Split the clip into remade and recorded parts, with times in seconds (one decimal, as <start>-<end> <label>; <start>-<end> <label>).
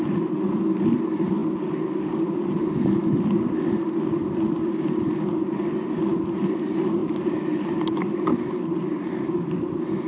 0.0-10.1 recorded